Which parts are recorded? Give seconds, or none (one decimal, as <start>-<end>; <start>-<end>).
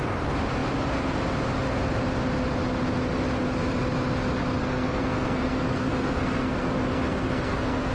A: 0.0-4.6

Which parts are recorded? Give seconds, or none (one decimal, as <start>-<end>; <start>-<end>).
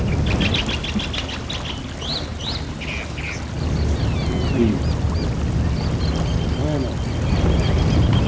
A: 0.0-8.3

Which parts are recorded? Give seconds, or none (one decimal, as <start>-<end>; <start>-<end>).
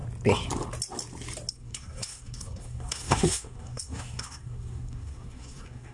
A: 0.0-1.5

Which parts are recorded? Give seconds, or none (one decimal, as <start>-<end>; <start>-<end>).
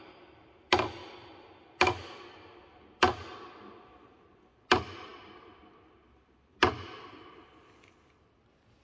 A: 0.0-8.8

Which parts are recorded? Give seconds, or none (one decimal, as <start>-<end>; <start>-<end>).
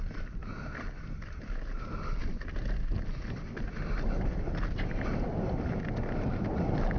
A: 0.0-7.0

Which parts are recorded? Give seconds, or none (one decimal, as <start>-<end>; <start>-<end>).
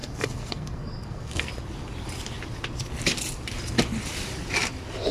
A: 1.5-5.1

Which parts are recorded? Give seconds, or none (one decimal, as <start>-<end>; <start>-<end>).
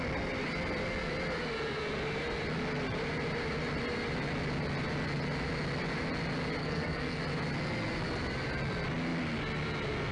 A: 0.0-6.6; 7.2-10.1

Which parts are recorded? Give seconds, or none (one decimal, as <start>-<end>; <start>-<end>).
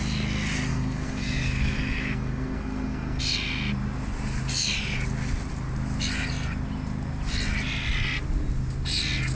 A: 0.0-0.7; 3.2-9.3